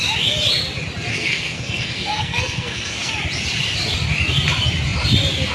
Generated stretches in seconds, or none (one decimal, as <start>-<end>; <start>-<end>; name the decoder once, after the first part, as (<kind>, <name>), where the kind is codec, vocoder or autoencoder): 1.1-3.1 (codec, SNAC)